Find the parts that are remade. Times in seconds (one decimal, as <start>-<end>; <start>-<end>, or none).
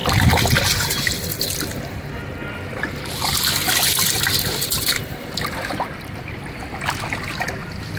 4.8-6.6; 7.6-8.0